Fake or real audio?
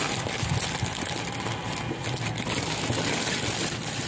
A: real